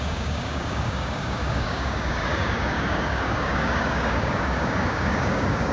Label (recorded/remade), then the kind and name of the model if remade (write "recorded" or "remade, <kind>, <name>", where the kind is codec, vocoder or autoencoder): remade, codec, DAC